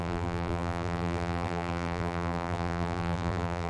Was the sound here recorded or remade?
remade